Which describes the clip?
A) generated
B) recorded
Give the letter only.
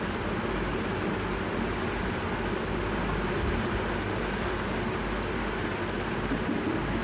B